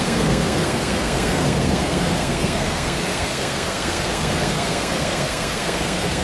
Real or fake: fake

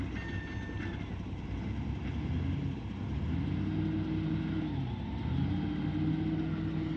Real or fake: real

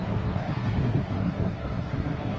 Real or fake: fake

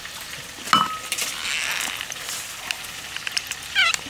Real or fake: real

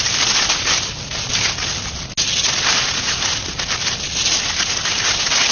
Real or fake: real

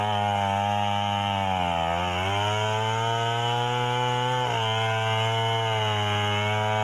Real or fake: real